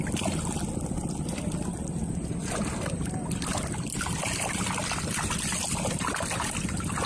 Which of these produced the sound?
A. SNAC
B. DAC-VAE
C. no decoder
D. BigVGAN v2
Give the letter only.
C